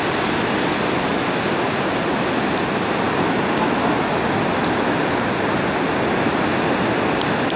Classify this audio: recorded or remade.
recorded